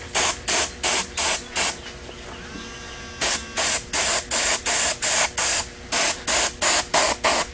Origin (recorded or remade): recorded